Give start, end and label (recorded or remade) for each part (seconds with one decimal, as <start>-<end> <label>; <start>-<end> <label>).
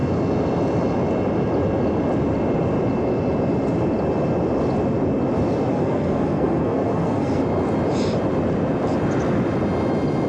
0.0-5.7 recorded; 5.7-7.4 remade; 7.4-10.3 recorded